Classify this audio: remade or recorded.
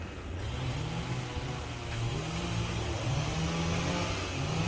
recorded